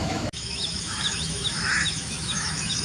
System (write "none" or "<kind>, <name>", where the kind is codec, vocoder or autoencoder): autoencoder, DAC-VAE